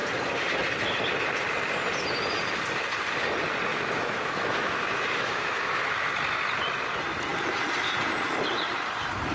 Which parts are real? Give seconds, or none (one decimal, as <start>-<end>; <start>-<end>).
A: 0.0-3.7; 6.1-9.3